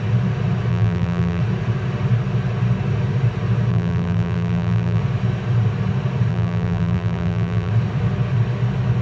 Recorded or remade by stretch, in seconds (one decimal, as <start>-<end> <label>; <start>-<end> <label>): 0.0-0.7 recorded; 0.7-1.4 remade; 1.4-3.7 recorded; 3.7-5.0 remade; 5.0-6.3 recorded; 6.3-7.7 remade; 7.7-9.0 recorded